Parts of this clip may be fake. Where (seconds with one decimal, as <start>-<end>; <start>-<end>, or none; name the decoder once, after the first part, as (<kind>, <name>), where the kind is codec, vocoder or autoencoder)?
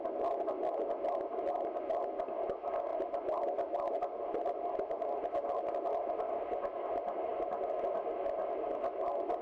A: none